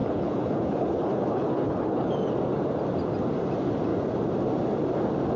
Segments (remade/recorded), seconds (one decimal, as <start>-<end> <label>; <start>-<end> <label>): 0.0-2.1 remade; 2.1-5.4 recorded